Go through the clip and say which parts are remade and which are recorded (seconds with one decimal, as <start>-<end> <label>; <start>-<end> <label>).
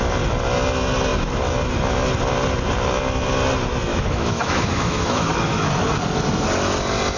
0.0-3.9 recorded; 3.9-5.7 remade; 5.7-7.2 recorded